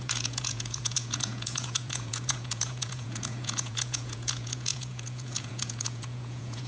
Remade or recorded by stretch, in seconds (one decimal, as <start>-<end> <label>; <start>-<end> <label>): 0.0-6.7 remade